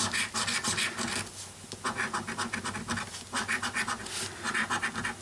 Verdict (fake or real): real